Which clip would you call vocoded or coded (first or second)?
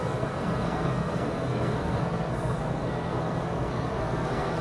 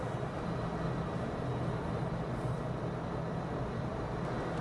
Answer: first